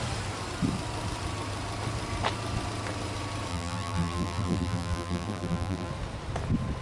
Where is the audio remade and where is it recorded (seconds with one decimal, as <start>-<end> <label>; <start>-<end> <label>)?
0.0-3.5 recorded; 3.5-5.9 remade; 5.9-6.8 recorded